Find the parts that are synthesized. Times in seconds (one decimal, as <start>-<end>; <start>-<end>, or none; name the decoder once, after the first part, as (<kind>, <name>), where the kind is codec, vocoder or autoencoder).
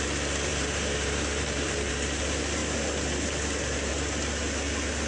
0.5-1.9 (vocoder, BigVGAN v2)